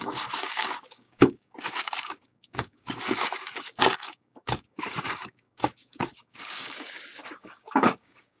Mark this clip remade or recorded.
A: remade